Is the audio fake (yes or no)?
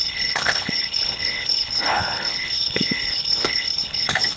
yes